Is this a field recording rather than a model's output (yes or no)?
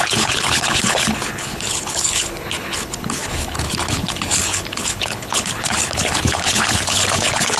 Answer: no